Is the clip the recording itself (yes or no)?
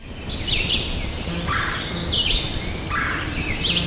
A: yes